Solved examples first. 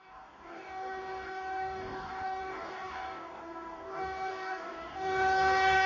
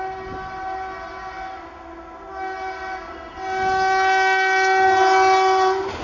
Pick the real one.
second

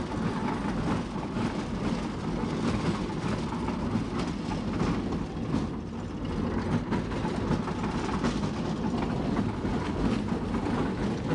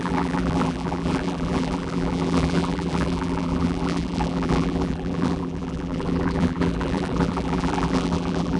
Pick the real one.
first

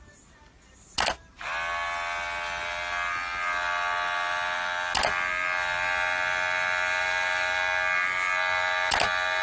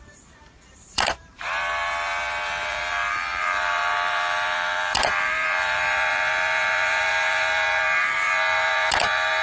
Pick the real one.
first